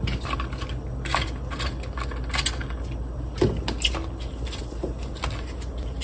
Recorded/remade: recorded